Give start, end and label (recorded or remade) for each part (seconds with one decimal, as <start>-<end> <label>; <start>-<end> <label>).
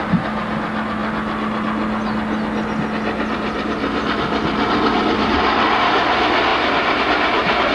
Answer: 0.0-7.7 recorded